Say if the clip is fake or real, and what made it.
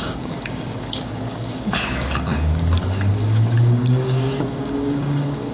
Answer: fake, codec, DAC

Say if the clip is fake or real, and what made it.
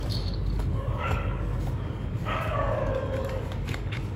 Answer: fake, codec, DAC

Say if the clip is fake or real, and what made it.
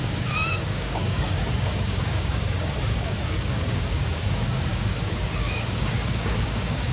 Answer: fake, codec, DAC